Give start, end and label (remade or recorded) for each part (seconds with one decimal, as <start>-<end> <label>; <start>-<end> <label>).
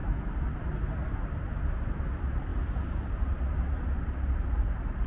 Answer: 0.0-5.1 recorded